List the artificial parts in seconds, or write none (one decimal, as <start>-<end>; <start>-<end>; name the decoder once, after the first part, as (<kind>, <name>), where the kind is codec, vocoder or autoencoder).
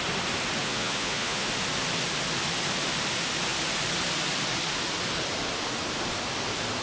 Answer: 0.6-1.5 (vocoder, Vocos)